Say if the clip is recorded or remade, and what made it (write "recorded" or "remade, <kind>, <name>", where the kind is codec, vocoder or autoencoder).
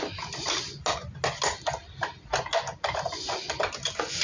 recorded